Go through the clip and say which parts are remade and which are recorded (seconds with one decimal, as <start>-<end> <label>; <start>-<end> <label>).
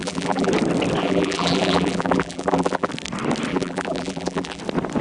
0.0-0.5 remade; 0.5-1.0 recorded; 1.0-2.9 remade; 2.9-3.5 recorded; 3.5-4.6 remade; 4.6-5.0 recorded